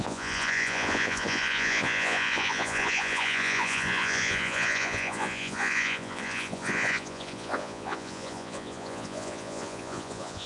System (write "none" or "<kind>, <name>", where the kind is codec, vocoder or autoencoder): vocoder, Vocos